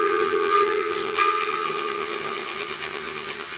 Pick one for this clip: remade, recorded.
remade